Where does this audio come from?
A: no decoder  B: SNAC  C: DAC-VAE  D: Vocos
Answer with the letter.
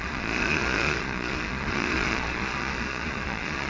D